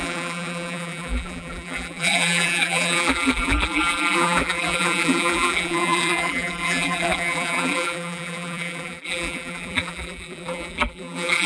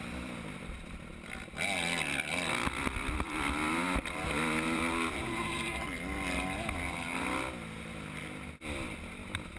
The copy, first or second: first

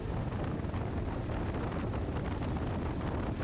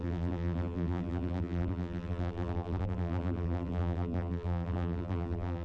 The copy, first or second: second